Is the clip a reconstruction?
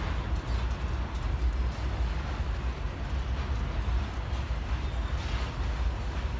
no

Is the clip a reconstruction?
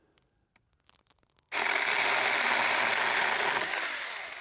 no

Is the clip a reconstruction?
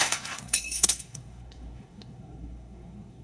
yes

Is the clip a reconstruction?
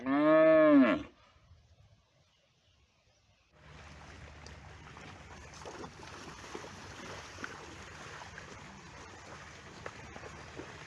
no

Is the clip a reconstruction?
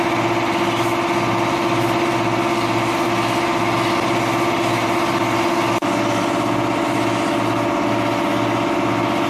no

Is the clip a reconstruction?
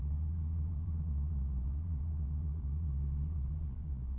yes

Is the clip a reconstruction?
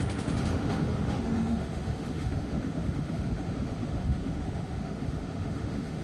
yes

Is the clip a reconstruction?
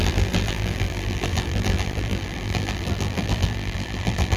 yes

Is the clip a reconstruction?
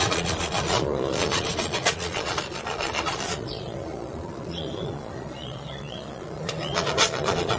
yes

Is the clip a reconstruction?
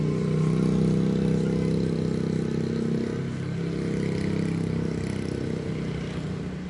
no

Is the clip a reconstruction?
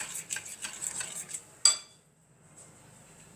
no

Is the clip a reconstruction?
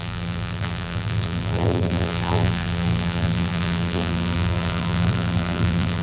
yes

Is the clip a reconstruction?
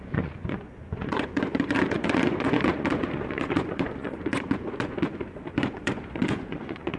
yes